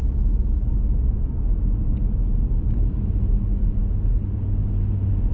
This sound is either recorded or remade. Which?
recorded